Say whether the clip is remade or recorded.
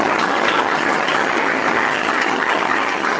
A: remade